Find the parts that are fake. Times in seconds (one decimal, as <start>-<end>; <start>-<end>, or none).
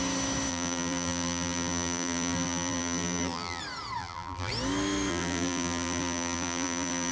0.5-3.6; 4.0-4.5; 5.1-7.1